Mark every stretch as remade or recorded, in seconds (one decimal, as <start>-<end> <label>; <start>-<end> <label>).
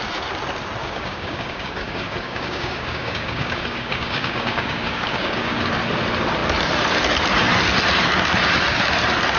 0.0-0.8 recorded; 0.8-5.6 remade; 5.6-9.4 recorded